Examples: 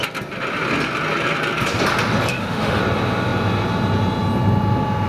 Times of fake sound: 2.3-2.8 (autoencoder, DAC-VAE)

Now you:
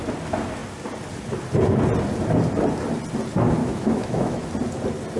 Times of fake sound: 3.6-4.5 (autoencoder, DAC-VAE)

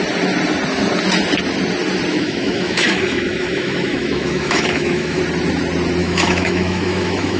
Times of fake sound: 2.1-5.2 (autoencoder, DAC-VAE); 6.0-7.4

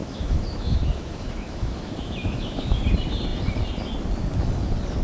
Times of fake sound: 0.0-2.8 (autoencoder, DAC-VAE)

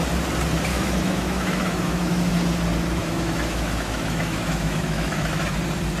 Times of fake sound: 0.7-2.3 (autoencoder, DAC-VAE); 3.0-5.4